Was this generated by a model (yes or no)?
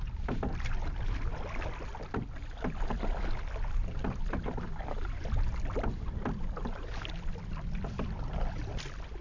no